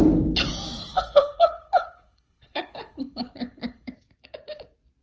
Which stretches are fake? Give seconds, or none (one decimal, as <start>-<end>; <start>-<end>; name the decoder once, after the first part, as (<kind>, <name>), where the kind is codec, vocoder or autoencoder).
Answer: 0.9-3.9 (codec, HILCodec)